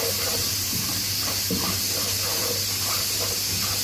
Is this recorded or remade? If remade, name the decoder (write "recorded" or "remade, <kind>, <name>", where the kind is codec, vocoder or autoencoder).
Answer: recorded